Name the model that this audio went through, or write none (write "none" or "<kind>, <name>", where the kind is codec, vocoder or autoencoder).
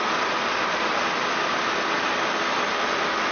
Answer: vocoder, BigVGAN v2